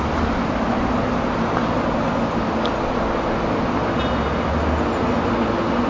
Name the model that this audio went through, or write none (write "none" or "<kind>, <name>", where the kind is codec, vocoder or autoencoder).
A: none